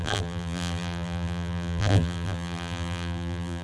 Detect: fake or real fake